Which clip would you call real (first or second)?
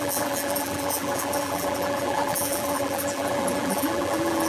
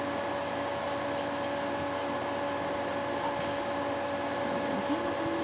second